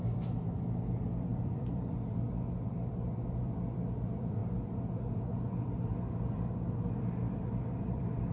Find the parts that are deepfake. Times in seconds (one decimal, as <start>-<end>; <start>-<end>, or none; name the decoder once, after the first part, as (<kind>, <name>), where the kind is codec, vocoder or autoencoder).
0.0-8.3 (vocoder, BigVGAN v2)